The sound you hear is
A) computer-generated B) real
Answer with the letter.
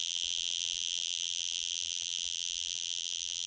A